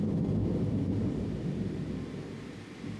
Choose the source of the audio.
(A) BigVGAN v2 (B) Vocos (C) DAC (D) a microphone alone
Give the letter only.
D